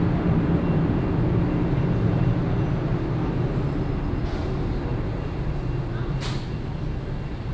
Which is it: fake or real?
real